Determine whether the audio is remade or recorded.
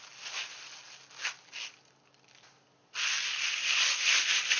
recorded